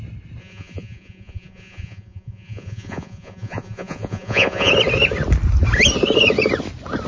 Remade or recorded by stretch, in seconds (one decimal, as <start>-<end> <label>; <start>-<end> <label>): 0.0-0.4 recorded; 0.4-4.7 remade; 4.7-7.1 recorded